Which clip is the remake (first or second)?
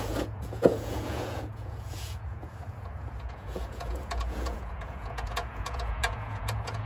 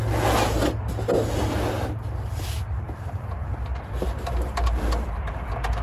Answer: first